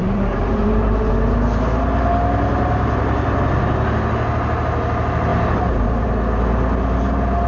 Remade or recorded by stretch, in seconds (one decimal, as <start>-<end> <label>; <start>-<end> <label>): 0.0-1.1 remade; 1.1-5.3 recorded; 5.3-6.1 remade; 6.1-7.5 recorded